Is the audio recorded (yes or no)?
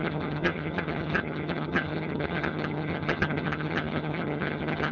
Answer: no